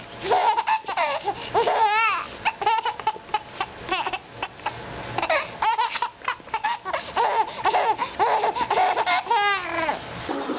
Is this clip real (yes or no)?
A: yes